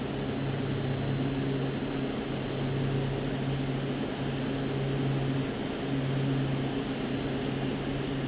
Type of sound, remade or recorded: recorded